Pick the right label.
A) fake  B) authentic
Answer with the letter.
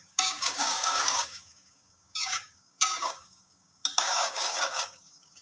A